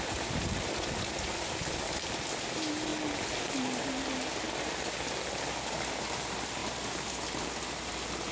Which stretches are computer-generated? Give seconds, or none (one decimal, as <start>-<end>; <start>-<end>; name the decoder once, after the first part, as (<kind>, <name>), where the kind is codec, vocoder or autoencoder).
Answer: none